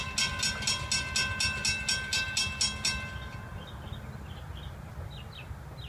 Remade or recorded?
recorded